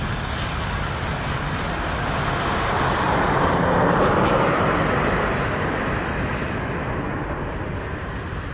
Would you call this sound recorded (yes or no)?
yes